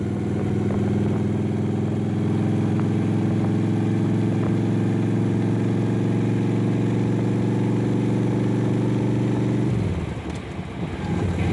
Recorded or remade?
recorded